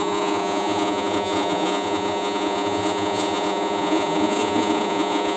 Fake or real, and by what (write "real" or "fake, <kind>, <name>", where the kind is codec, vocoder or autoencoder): fake, vocoder, Vocos